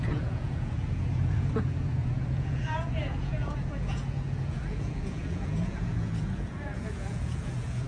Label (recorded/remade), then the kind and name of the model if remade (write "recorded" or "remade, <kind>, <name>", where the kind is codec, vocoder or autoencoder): remade, vocoder, Vocos